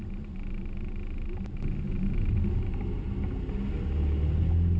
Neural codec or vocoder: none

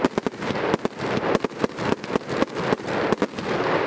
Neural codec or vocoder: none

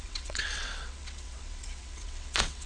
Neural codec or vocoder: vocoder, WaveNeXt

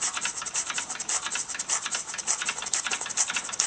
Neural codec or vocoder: none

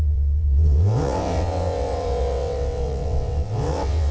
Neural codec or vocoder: vocoder, WaveNeXt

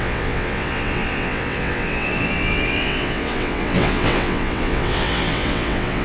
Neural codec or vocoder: vocoder, WaveNeXt